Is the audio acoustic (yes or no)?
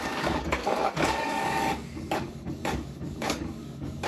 no